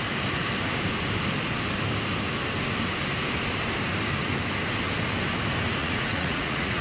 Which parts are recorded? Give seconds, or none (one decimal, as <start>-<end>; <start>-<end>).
0.0-5.8